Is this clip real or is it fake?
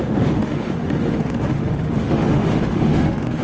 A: fake